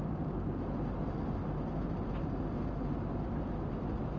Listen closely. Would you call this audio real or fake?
real